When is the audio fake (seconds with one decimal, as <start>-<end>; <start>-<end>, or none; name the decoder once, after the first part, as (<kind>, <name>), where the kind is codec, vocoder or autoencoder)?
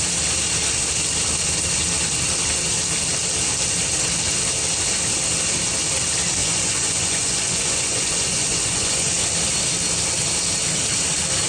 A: 6.4-9.1 (vocoder, Vocos)